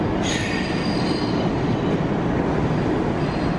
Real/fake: real